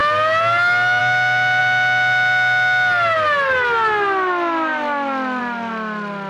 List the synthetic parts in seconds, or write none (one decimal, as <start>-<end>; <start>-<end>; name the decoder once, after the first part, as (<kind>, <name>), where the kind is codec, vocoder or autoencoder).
none